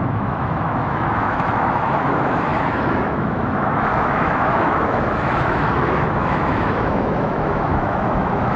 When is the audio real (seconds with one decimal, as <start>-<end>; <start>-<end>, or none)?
none